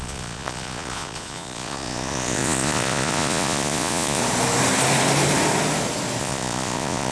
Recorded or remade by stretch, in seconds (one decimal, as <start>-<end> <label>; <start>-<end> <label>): 0.0-4.2 remade; 4.2-6.2 recorded; 6.2-7.1 remade